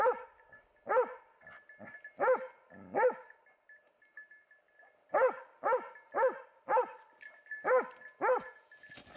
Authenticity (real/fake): real